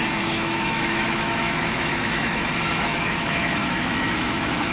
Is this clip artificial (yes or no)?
yes